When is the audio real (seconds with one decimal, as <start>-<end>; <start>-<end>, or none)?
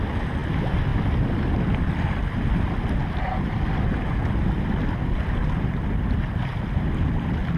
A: 0.0-7.6